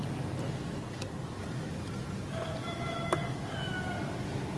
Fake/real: real